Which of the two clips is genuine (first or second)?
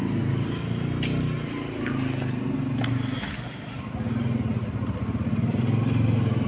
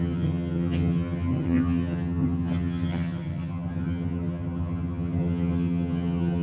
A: first